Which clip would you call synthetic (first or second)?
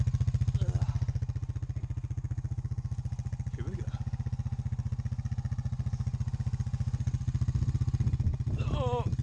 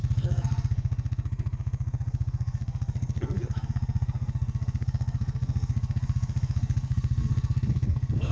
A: second